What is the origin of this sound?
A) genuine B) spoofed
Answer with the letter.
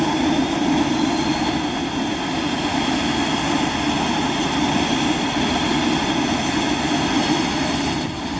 A